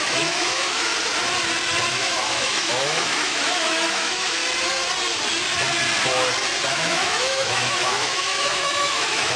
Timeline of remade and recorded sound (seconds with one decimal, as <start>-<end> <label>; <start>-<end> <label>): 0.0-0.9 remade; 0.9-1.9 recorded; 1.9-4.4 remade; 4.4-6.7 recorded; 6.7-9.4 remade